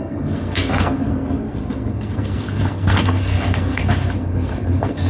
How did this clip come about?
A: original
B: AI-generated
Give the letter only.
B